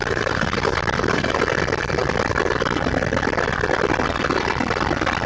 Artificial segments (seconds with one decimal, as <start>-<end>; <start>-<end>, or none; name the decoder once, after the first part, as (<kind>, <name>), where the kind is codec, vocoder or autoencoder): 0.0-1.4 (vocoder, BigVGAN v2)